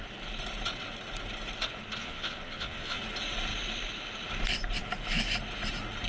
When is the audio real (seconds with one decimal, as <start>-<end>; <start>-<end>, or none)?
0.0-2.0; 3.0-6.1